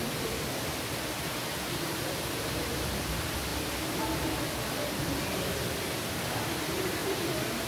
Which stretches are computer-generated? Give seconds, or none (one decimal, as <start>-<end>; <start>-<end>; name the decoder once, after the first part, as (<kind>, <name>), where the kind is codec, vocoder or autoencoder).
1.5-3.1 (vocoder, BigVGAN v2)